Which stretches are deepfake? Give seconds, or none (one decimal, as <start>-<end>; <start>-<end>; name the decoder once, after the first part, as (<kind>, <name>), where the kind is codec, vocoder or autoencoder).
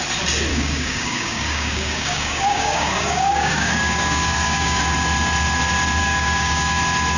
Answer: 0.5-4.8 (codec, DAC); 6.0-6.8